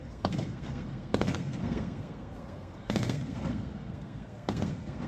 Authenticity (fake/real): fake